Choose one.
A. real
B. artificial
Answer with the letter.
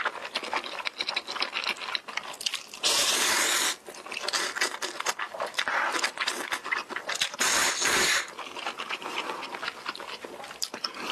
A